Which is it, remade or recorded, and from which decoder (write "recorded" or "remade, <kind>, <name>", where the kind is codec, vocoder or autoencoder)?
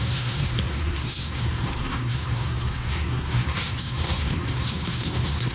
remade, codec, SNAC